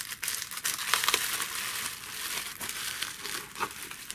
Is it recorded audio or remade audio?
recorded